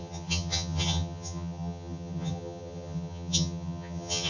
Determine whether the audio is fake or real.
fake